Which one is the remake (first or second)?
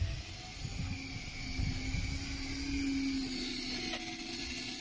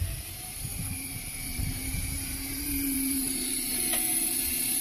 second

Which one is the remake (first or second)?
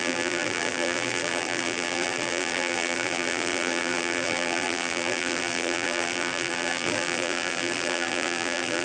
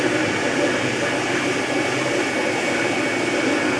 first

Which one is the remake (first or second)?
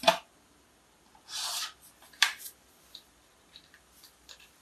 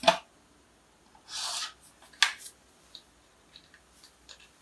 first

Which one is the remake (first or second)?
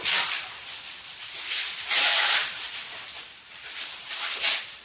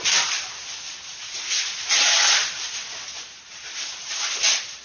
first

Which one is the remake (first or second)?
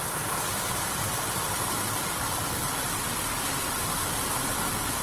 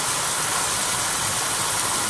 first